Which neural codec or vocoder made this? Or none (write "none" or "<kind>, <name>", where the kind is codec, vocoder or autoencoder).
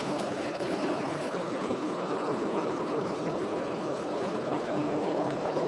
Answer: codec, HILCodec